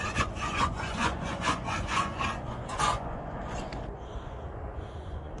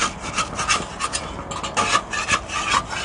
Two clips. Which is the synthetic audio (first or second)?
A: first